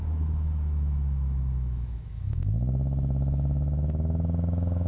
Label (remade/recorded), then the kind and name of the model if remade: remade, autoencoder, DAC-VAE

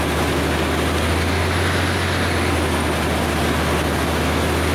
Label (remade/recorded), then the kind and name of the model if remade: recorded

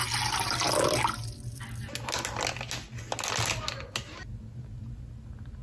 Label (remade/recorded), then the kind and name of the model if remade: recorded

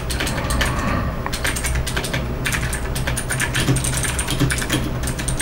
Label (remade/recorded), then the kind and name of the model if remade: recorded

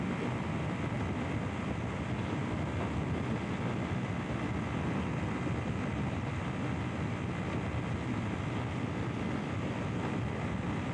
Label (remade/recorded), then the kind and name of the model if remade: recorded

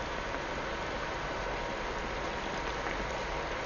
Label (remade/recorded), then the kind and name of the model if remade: recorded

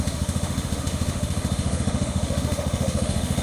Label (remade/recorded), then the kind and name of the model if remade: remade, autoencoder, DAC-VAE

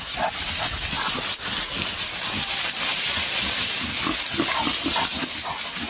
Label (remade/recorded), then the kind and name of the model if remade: recorded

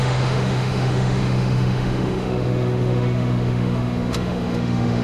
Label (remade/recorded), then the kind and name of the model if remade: remade, autoencoder, DAC-VAE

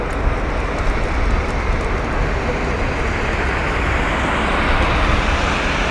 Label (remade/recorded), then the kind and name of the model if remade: recorded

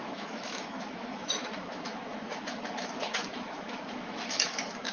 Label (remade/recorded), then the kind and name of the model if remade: remade, autoencoder, DAC-VAE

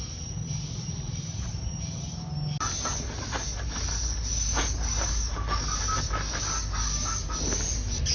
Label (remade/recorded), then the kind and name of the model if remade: recorded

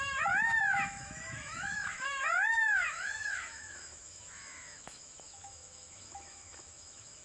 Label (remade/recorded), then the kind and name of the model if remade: remade, autoencoder, DAC-VAE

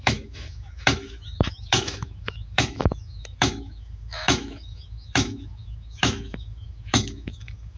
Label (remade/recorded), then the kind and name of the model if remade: remade, autoencoder, DAC-VAE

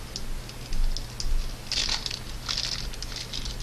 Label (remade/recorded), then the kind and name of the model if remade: recorded